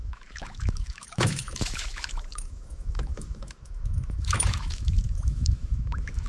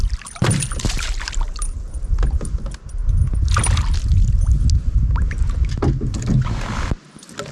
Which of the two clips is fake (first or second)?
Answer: first